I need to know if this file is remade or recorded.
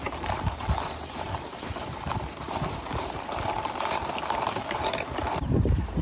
remade